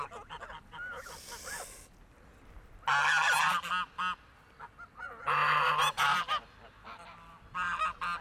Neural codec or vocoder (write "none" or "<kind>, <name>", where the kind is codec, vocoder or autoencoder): none